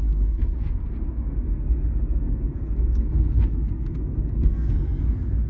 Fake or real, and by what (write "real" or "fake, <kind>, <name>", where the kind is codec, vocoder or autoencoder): fake, codec, SNAC